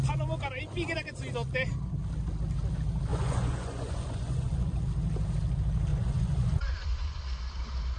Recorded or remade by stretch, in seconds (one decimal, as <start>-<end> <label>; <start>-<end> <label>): 0.0-3.1 recorded; 3.1-4.8 remade; 4.8-5.9 recorded; 5.9-7.2 remade; 7.2-8.0 recorded